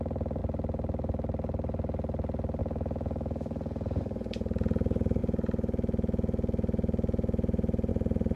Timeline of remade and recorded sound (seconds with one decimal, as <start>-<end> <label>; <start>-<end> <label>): 0.0-8.4 remade